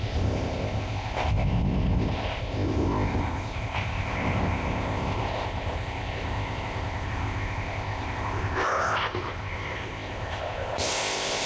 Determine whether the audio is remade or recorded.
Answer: remade